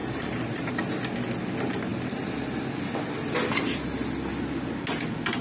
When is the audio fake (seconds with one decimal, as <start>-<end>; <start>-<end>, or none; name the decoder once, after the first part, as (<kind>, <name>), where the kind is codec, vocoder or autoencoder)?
0.0-0.8 (vocoder, BigVGAN v2)